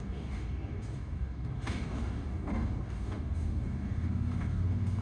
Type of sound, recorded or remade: remade